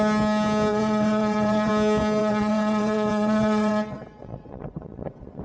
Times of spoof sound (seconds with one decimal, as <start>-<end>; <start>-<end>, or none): 0.7-1.7; 2.2-5.4